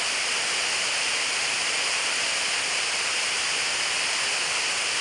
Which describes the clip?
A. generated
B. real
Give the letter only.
B